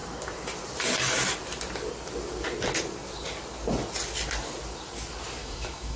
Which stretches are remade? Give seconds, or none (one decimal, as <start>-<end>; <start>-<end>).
5.4-6.0